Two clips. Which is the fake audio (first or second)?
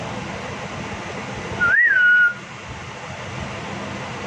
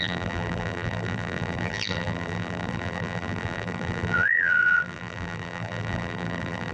second